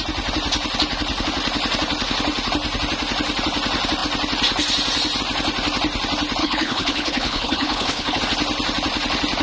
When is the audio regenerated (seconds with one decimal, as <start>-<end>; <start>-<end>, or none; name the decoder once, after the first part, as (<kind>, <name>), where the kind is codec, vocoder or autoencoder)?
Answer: 6.4-8.2 (codec, HILCodec)